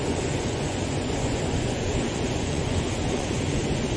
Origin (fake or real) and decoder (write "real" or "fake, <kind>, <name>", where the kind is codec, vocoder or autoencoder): fake, vocoder, Vocos